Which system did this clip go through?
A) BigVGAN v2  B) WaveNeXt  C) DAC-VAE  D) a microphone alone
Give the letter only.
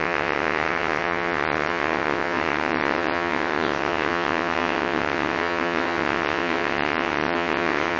B